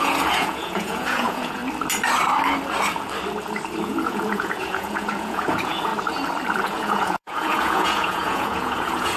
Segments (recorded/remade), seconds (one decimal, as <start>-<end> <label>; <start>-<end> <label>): 0.0-1.6 remade; 1.6-3.8 recorded; 3.8-5.9 remade; 5.9-6.6 recorded; 6.6-9.2 remade